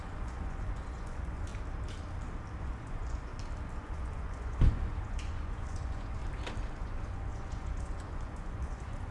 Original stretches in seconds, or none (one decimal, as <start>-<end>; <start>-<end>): 1.5-2.6; 3.3-3.8; 6.2-6.7